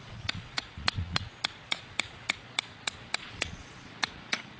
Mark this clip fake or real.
fake